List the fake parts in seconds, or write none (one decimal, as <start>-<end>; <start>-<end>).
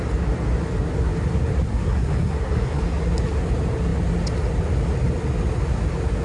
1.7-2.8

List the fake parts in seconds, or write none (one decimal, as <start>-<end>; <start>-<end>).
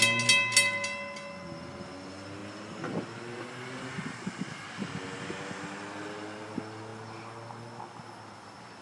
none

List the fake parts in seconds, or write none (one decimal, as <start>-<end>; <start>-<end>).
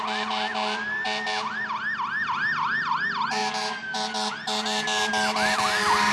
none